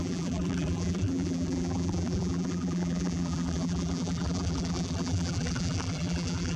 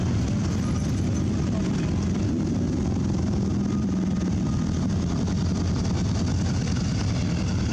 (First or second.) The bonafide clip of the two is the second